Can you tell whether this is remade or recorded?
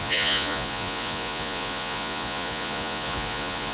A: remade